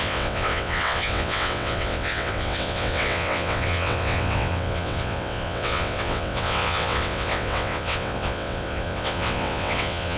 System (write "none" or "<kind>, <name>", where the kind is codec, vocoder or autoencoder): vocoder, WaveNeXt